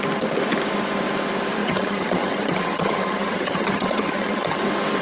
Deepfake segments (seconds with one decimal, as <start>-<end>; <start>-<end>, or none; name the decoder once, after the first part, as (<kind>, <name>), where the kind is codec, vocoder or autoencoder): 1.6-4.6 (vocoder, HiFi-GAN)

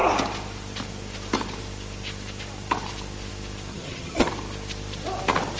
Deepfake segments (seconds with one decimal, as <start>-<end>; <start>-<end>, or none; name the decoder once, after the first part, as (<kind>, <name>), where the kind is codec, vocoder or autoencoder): 3.7-4.3 (vocoder, HiFi-GAN)